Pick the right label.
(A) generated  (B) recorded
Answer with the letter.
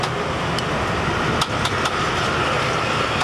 B